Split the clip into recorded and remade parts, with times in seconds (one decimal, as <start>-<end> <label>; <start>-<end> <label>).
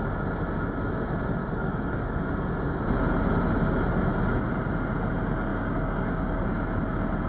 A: 0.0-1.4 recorded; 1.4-2.3 remade; 2.3-5.5 recorded; 5.5-6.5 remade; 6.5-7.3 recorded